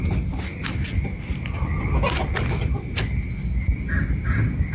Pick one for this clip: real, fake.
real